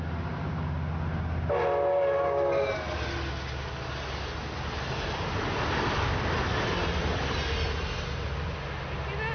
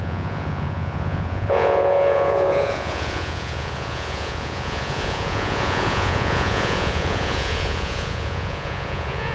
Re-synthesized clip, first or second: second